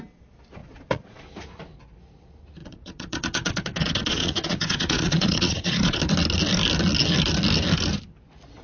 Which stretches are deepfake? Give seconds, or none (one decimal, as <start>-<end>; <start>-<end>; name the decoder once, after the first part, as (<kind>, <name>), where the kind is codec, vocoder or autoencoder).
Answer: 0.6-1.2 (vocoder, Vocos); 2.6-6.0